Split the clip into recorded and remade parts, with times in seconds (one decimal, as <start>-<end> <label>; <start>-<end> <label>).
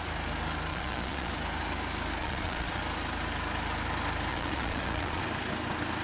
0.0-0.7 recorded; 0.7-1.3 remade; 1.3-2.2 recorded; 2.2-2.8 remade; 2.8-4.3 recorded; 4.3-5.2 remade; 5.2-6.0 recorded